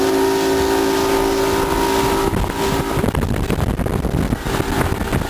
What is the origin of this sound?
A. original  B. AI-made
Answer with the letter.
A